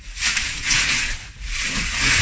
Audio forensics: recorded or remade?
remade